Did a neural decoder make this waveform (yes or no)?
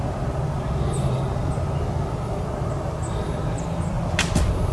no